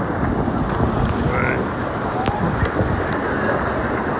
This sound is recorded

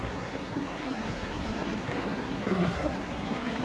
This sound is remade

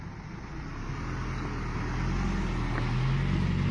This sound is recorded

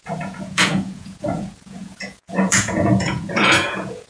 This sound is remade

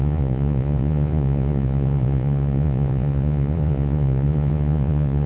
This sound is remade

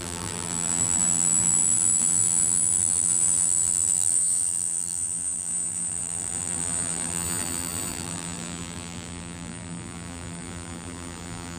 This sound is remade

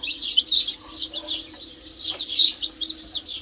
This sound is recorded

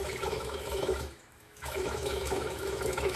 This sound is remade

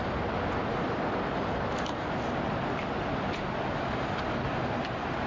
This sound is recorded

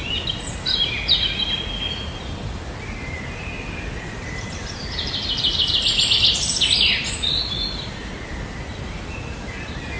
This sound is recorded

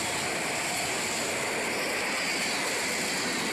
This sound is recorded